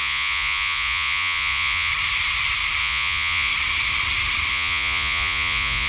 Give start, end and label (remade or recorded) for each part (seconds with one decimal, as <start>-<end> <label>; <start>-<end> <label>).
0.0-1.9 remade; 1.9-2.8 recorded; 2.8-3.5 remade; 3.5-4.5 recorded; 4.5-5.9 remade